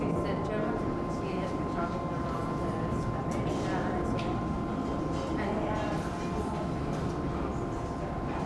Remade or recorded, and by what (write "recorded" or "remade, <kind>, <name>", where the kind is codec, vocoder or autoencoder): recorded